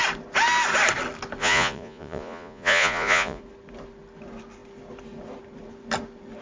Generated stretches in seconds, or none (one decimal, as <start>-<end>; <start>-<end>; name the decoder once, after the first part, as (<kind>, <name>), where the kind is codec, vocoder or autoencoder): 1.4-3.4 (vocoder, Vocos)